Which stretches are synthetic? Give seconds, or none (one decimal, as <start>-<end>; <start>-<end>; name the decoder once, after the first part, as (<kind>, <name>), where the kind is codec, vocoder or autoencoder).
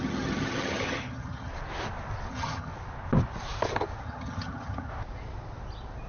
0.0-1.5 (vocoder, HiFi-GAN); 2.3-2.7; 4.0-4.9